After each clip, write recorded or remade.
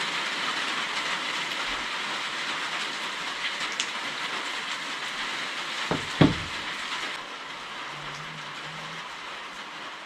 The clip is recorded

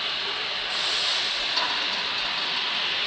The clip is recorded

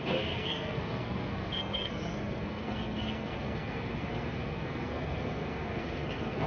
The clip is remade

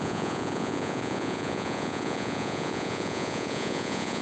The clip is remade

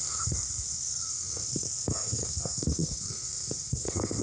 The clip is remade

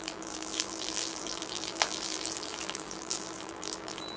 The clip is remade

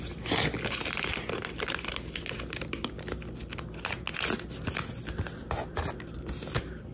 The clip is recorded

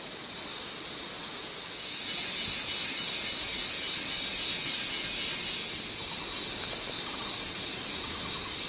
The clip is recorded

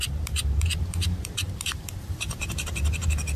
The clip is remade